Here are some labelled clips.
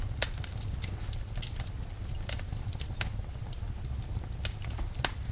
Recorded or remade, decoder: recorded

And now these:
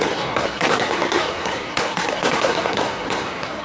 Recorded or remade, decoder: remade, codec, SNAC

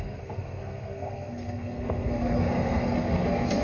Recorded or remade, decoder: remade, codec, SNAC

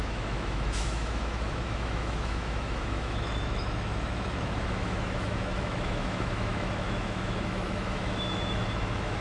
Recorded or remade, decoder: remade, autoencoder, DAC-VAE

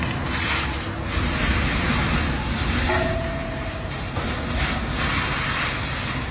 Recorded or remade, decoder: recorded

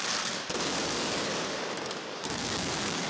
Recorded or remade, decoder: remade, codec, DAC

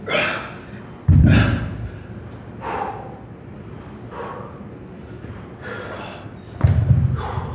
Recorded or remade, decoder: recorded